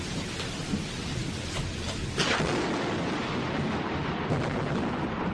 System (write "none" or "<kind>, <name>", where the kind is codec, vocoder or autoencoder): none